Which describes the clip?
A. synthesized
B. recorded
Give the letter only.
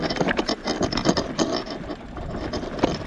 B